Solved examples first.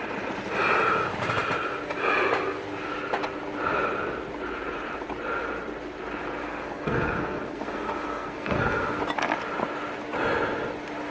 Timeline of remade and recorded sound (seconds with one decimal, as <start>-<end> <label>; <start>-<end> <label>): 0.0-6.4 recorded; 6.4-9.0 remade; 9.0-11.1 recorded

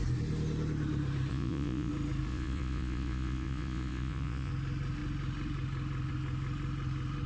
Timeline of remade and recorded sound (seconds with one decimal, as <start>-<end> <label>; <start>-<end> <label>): 0.0-1.3 recorded; 1.3-1.9 remade; 1.9-2.3 recorded; 2.3-4.5 remade; 4.5-7.3 recorded

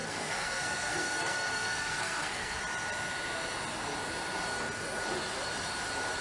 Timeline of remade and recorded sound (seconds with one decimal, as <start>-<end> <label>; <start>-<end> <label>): 0.0-2.6 remade; 2.6-6.2 recorded

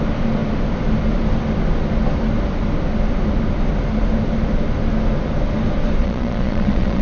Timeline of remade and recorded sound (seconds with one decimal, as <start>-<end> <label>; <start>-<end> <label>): 0.0-6.0 recorded; 6.0-7.0 remade